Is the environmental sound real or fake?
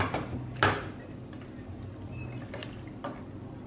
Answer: real